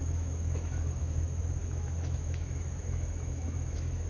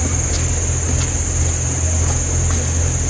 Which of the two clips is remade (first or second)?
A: first